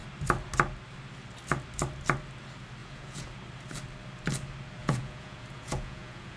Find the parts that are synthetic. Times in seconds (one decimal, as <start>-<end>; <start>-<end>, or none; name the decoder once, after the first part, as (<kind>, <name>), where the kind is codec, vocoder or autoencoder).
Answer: 2.8-3.3 (vocoder, Vocos); 4.8-6.4